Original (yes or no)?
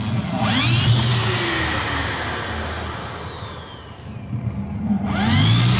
yes